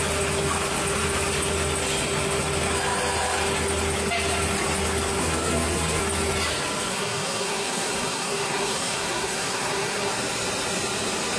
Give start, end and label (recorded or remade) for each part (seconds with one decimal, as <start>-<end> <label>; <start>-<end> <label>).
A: 0.0-5.2 recorded; 5.2-6.0 remade; 6.0-6.9 recorded; 6.9-10.1 remade; 10.1-11.4 recorded